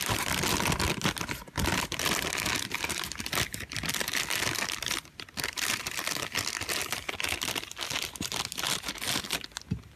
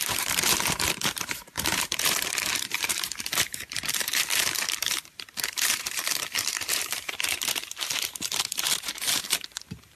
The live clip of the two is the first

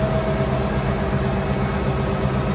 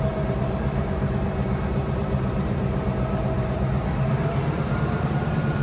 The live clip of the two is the first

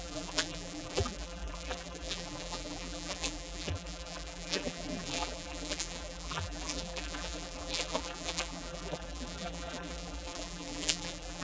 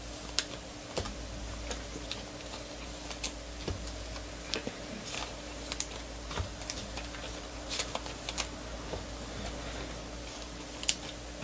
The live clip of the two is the second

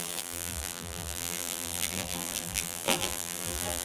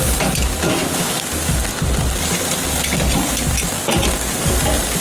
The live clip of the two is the second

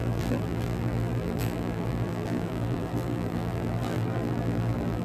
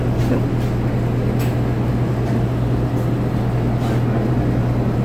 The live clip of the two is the second